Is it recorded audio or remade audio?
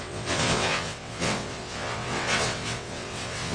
remade